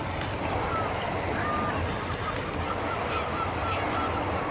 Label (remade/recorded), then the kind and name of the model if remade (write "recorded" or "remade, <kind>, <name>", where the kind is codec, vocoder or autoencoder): recorded